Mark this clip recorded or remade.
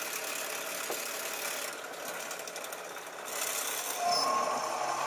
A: recorded